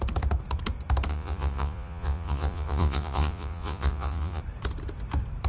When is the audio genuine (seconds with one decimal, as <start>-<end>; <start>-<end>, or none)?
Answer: 0.0-1.1; 4.4-5.5